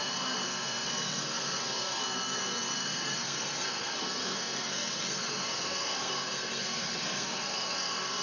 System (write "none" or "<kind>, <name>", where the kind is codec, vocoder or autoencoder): codec, SNAC